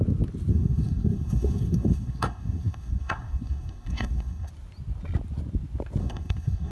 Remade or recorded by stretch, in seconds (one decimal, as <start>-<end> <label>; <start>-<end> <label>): 0.0-0.5 recorded; 0.5-4.5 remade; 4.5-6.0 recorded; 6.0-6.7 remade